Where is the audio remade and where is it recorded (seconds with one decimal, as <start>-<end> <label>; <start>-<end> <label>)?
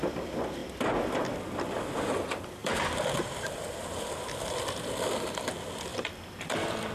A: 0.0-2.6 recorded; 2.6-4.1 remade; 4.1-5.9 recorded; 5.9-6.9 remade